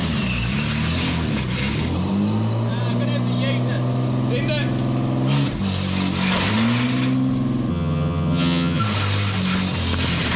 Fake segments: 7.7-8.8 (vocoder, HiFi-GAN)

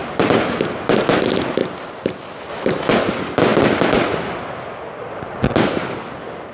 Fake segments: none